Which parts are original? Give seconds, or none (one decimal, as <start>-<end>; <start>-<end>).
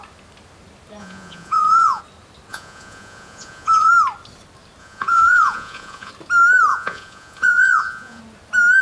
0.0-1.0; 2.0-2.5; 3.9-4.8; 6.1-6.7; 8.2-8.8